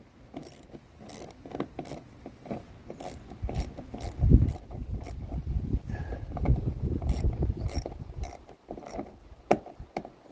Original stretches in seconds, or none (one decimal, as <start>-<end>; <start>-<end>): 0.0-10.3